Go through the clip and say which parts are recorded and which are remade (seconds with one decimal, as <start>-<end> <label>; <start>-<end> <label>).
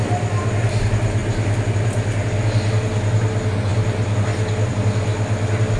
0.0-5.8 recorded